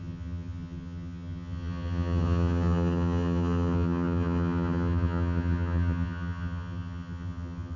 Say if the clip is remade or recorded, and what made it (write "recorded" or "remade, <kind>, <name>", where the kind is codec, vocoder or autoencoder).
remade, vocoder, HiFi-GAN